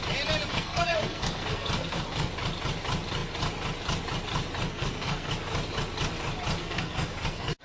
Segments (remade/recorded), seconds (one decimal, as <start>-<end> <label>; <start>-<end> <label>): 0.0-0.5 recorded; 0.5-2.3 remade; 2.3-4.7 recorded; 4.7-5.3 remade; 5.3-6.6 recorded; 6.6-7.6 remade